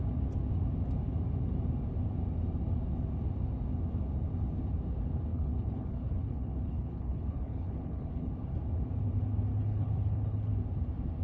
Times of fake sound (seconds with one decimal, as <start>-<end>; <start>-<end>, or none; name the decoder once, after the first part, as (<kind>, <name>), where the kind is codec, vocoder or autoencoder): 5.3-8.3 (codec, HILCodec); 9.5-10.5

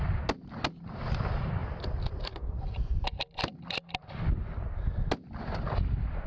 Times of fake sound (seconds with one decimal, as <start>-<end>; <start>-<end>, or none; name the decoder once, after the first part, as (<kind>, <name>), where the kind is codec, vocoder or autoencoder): none

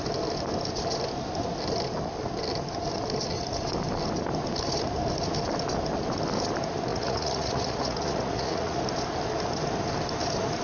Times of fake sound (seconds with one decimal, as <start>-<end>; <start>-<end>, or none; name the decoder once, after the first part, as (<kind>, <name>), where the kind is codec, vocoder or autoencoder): 6.9-8.8 (vocoder, Vocos)

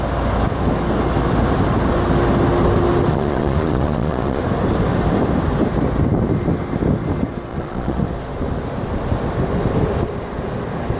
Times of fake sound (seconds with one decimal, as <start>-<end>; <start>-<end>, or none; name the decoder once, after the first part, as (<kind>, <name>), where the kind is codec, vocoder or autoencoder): 3.1-4.4 (vocoder, Vocos); 7.5-8.0

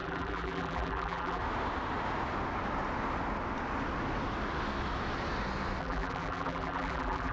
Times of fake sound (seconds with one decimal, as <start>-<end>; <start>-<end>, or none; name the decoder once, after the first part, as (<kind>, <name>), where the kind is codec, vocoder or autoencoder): 0.0-1.4 (vocoder, BigVGAN v2); 5.8-7.3

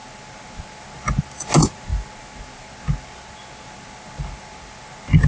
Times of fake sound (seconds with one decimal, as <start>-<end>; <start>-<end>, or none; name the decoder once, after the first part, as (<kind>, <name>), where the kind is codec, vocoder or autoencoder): none

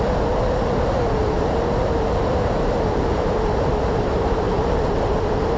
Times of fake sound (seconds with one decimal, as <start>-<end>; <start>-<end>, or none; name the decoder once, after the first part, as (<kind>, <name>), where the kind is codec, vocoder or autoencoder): 1.2-4.6 (vocoder, BigVGAN v2)

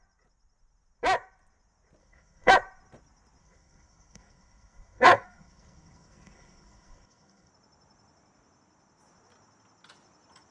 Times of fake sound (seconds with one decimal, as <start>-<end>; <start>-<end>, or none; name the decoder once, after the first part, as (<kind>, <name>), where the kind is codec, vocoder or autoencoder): 2.0-2.5 (codec, SNAC); 3.4-7.5